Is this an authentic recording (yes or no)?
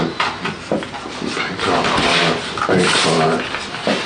yes